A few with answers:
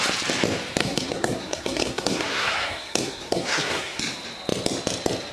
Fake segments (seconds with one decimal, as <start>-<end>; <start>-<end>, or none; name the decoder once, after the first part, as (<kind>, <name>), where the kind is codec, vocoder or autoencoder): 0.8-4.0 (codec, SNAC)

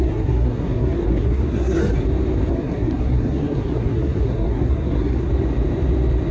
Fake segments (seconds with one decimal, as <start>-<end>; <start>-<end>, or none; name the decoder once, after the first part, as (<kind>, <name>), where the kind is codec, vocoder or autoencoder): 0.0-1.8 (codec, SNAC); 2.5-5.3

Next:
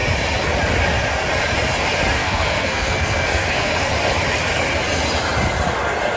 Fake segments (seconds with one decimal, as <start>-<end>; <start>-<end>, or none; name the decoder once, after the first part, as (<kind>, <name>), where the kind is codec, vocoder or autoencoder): 2.2-3.9 (codec, SNAC)

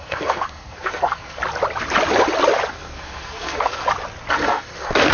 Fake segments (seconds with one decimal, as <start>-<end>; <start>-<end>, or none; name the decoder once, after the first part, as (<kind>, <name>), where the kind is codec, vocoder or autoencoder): 0.0-1.4 (codec, SNAC); 2.7-3.8; 4.3-5.1

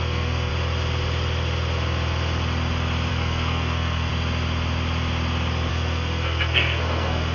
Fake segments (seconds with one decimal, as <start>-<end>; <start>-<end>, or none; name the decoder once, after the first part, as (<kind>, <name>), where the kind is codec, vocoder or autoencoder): 0.0-0.5 (codec, SNAC); 3.1-4.1; 5.7-7.3